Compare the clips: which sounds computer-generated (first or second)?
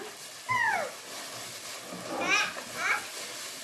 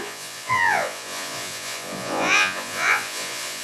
second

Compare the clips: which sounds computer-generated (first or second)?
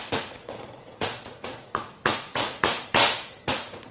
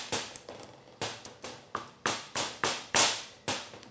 first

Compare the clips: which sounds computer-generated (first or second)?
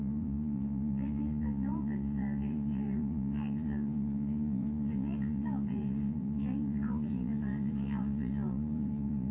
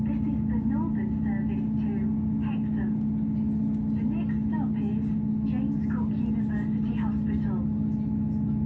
first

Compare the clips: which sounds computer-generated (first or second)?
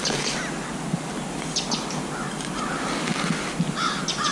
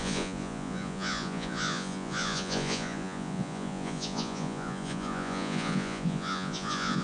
second